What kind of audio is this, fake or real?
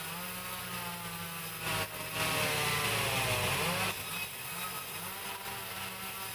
real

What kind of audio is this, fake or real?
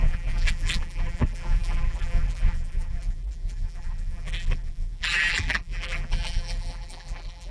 fake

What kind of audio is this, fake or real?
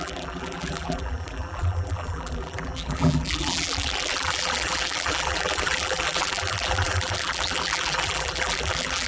fake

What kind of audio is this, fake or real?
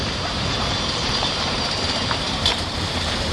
fake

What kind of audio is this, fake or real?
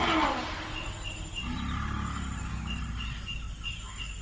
real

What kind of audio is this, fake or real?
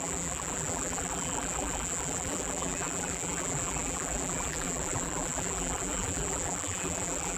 fake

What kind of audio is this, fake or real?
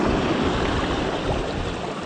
fake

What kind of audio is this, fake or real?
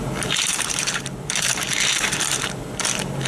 fake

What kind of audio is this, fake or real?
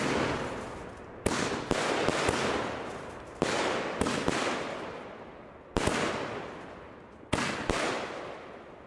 real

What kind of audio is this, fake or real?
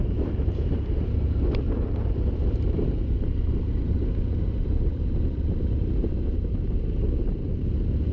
fake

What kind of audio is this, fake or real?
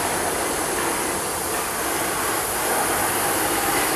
real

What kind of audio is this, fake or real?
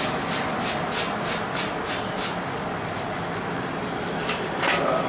real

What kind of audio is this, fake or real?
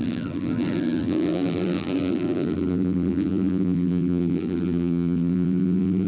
fake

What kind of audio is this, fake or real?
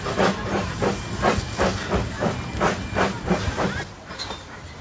real